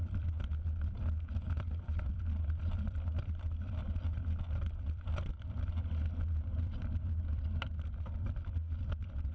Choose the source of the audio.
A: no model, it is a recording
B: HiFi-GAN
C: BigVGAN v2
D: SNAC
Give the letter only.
C